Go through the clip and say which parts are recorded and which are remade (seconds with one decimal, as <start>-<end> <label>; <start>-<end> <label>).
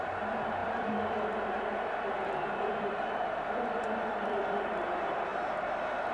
0.0-5.3 remade; 5.3-6.1 recorded